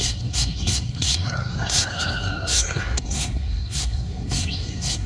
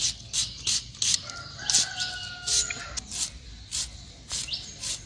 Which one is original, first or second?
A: second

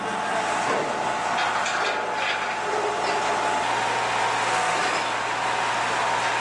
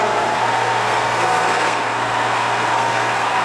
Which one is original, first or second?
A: first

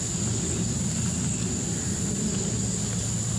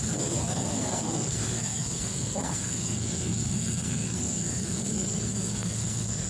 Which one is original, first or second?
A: first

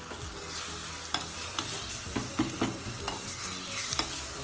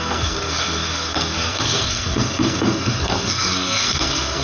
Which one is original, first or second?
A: first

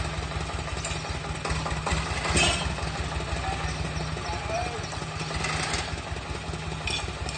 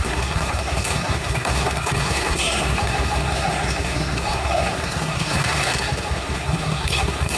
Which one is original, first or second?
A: first